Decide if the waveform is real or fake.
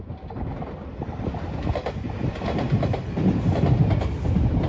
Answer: real